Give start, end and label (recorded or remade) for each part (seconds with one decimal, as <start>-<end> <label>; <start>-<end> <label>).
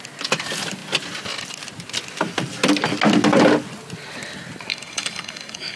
0.0-4.7 recorded; 4.7-5.8 remade